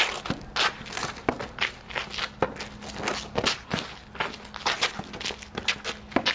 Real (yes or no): yes